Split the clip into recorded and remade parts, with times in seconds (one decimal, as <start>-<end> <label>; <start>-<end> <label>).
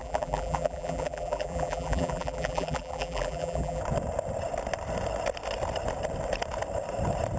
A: 0.0-3.8 remade; 3.8-7.4 recorded